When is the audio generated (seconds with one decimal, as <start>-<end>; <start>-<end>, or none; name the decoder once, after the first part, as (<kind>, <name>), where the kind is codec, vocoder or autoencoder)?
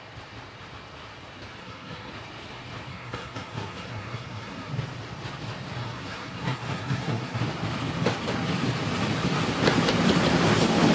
1.6-2.1 (codec, SNAC); 2.9-4.7; 5.8-7.4